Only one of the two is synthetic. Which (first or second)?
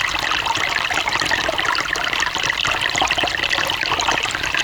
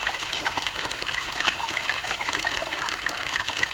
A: second